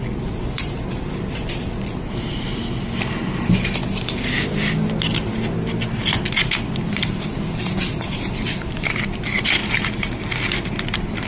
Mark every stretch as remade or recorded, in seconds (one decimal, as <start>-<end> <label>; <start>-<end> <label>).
0.0-2.5 remade; 2.5-6.9 recorded; 6.9-9.6 remade; 9.6-10.8 recorded; 10.8-11.3 remade